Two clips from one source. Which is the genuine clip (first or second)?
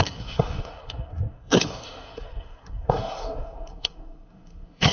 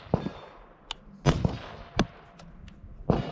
second